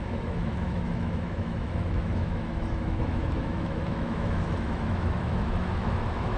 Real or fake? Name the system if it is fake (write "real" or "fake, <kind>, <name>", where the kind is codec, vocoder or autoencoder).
fake, autoencoder, DAC-VAE